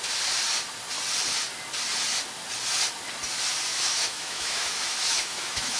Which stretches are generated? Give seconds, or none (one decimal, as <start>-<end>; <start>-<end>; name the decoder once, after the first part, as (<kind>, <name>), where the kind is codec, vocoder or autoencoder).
3.7-5.8 (autoencoder, DAC-VAE)